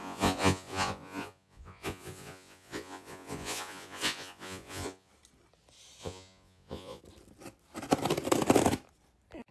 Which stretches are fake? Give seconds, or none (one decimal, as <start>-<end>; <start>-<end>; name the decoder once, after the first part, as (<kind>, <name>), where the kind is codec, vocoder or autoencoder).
0.0-5.1 (vocoder, Vocos); 6.0-7.0